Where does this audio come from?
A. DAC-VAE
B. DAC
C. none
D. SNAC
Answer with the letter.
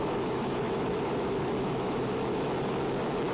A